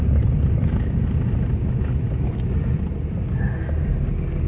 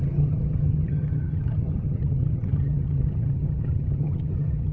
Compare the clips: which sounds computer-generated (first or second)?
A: second